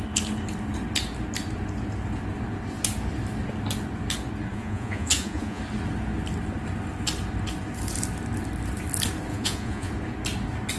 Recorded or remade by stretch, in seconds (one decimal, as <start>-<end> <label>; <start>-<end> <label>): 0.0-4.5 recorded; 4.5-5.6 remade; 5.6-9.3 recorded; 9.3-9.9 remade; 9.9-10.8 recorded